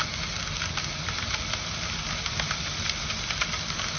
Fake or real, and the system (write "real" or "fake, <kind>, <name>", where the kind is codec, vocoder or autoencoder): real